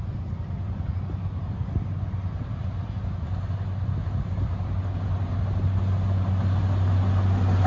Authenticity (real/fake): real